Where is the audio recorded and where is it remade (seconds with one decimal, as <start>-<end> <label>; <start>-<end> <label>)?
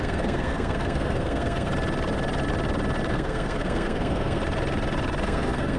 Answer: 0.0-1.7 remade; 1.7-3.1 recorded; 3.1-4.4 remade; 4.4-5.2 recorded; 5.2-5.8 remade